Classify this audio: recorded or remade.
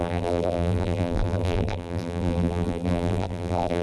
remade